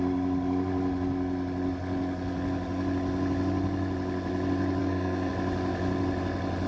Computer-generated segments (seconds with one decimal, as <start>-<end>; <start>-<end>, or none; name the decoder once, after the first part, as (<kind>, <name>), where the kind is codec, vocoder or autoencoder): 4.8-5.3 (codec, SNAC)